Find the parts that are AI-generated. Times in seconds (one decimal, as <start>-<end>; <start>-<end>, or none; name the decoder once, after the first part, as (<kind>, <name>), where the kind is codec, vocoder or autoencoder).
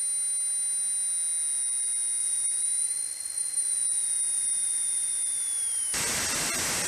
2.2-6.2 (vocoder, BigVGAN v2)